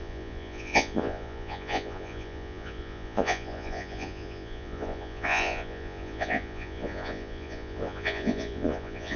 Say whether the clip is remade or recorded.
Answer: remade